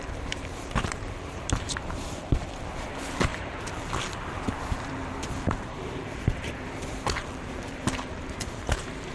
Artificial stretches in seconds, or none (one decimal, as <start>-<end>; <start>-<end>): 0.0-9.1